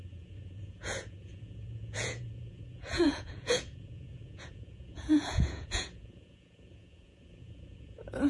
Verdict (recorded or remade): remade